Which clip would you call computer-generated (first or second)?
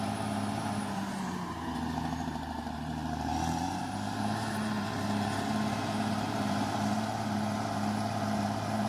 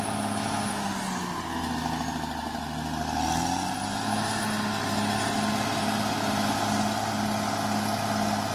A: first